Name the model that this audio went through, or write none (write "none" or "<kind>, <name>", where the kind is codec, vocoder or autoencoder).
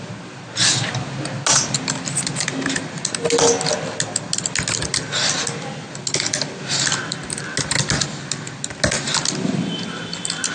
none